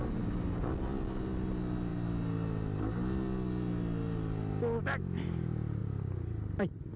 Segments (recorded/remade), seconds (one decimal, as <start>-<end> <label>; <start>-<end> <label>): 0.0-7.0 recorded